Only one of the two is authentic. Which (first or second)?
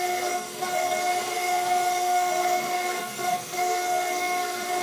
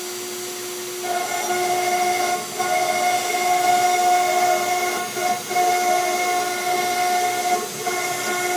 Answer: second